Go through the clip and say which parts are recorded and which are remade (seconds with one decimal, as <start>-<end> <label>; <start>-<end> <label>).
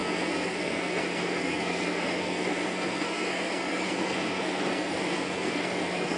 0.0-6.2 remade